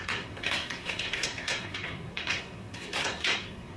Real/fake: fake